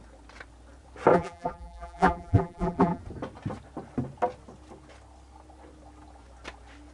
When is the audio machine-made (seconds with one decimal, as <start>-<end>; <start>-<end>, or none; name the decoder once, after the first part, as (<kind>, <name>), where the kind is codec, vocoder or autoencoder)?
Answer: 1.1-3.0 (vocoder, BigVGAN v2)